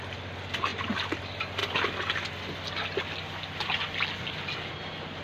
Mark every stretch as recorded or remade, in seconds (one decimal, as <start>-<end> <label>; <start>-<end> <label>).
0.0-5.2 recorded